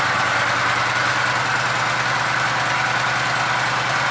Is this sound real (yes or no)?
no